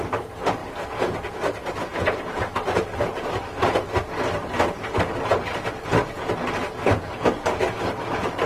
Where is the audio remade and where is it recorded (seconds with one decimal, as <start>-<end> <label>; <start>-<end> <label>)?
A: 0.0-8.5 recorded

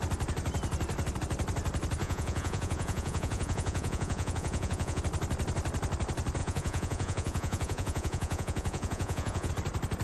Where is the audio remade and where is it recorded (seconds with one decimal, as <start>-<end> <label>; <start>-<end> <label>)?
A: 0.0-2.0 recorded; 2.0-5.0 remade; 5.0-6.4 recorded; 6.4-9.5 remade; 9.5-10.0 recorded

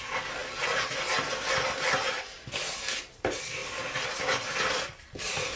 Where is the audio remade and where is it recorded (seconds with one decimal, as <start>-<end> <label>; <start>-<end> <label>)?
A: 0.0-0.4 remade; 0.4-1.9 recorded; 1.9-3.6 remade; 3.6-4.2 recorded; 4.2-5.6 remade

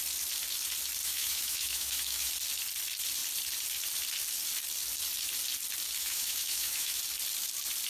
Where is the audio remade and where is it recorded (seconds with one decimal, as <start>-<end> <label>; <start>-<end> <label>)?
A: 0.0-1.0 recorded; 1.0-2.3 remade; 2.3-6.0 recorded; 6.0-7.0 remade; 7.0-7.9 recorded

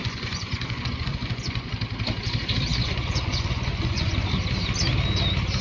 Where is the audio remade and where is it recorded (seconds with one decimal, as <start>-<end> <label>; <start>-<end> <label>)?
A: 0.0-1.7 remade; 1.7-2.7 recorded; 2.7-4.3 remade; 4.3-5.6 recorded

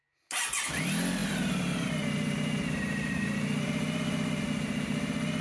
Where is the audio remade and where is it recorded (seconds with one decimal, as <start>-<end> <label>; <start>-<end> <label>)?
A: 0.0-1.2 recorded; 1.2-4.4 remade; 4.4-5.4 recorded

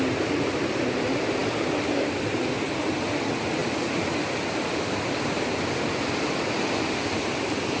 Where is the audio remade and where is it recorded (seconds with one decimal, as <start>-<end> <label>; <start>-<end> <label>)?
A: 0.0-7.8 recorded

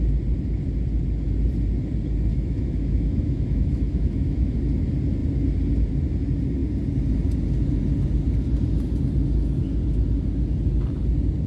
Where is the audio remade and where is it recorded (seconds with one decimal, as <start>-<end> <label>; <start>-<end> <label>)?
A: 0.0-2.3 recorded; 2.3-4.6 remade; 4.6-11.5 recorded